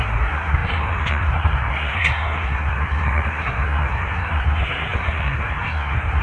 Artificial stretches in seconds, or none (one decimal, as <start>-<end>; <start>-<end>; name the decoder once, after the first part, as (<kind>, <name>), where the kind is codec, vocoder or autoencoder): 0.0-6.2 (codec, SNAC)